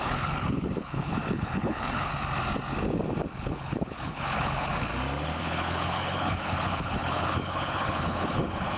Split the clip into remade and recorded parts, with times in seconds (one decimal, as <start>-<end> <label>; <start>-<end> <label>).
0.0-2.1 remade; 2.1-3.3 recorded; 3.3-4.9 remade; 4.9-5.4 recorded; 5.4-8.8 remade

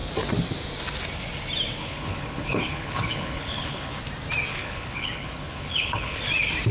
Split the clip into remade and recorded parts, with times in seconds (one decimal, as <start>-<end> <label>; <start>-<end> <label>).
0.0-1.8 recorded; 1.8-4.0 remade; 4.0-4.5 recorded; 4.5-6.2 remade; 6.2-6.7 recorded

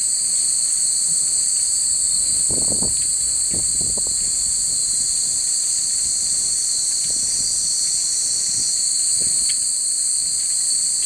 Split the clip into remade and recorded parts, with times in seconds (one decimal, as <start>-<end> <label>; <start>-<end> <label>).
0.0-11.1 recorded

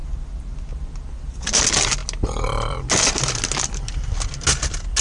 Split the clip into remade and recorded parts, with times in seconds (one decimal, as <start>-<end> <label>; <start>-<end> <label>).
0.0-5.0 recorded

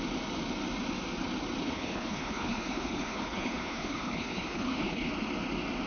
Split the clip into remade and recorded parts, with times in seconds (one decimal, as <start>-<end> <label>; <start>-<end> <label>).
0.0-1.6 recorded; 1.6-5.1 remade; 5.1-5.9 recorded